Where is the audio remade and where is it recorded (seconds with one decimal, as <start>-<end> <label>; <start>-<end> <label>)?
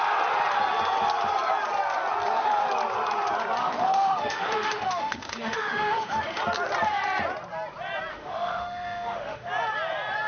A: 0.0-3.6 recorded; 3.6-6.4 remade; 6.4-8.1 recorded; 8.1-9.5 remade; 9.5-10.3 recorded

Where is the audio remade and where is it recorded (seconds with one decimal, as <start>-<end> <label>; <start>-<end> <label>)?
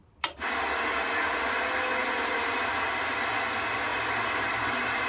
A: 0.0-5.1 recorded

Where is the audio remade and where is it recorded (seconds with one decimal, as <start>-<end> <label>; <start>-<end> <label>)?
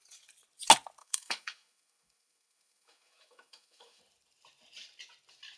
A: 0.0-1.0 recorded; 1.0-4.0 remade; 4.0-5.6 recorded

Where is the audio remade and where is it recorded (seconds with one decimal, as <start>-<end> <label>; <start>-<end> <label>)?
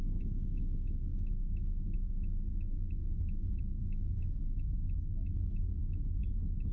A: 0.0-6.7 remade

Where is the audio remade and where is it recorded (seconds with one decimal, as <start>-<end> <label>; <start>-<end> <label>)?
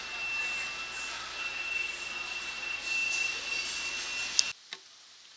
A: 0.0-5.4 recorded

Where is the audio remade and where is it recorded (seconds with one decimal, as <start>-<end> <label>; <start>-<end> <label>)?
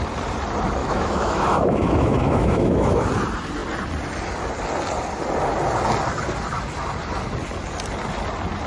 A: 0.0-0.8 recorded; 0.8-3.0 remade; 3.0-8.7 recorded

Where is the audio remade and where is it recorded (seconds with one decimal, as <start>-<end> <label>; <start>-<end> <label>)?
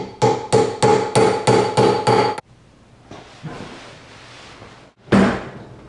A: 0.0-5.9 recorded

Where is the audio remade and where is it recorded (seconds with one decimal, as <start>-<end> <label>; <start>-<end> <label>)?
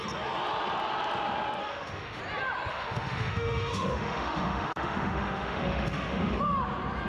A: 0.0-1.6 recorded; 1.6-2.2 remade; 2.2-2.7 recorded; 2.7-6.4 remade; 6.4-7.1 recorded